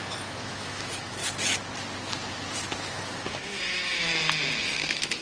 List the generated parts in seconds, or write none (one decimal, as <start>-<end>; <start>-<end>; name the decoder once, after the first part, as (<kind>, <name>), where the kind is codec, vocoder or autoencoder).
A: 0.0-1.2 (autoencoder, DAC-VAE); 2.9-4.1; 4.6-5.2